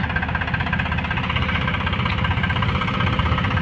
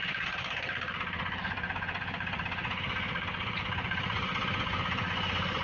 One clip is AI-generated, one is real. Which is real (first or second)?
first